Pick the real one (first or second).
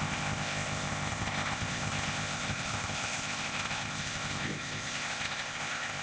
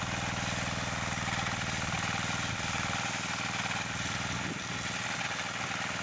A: second